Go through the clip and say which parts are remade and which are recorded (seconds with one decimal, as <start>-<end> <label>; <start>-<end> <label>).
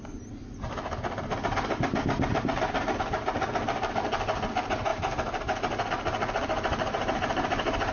0.0-7.9 recorded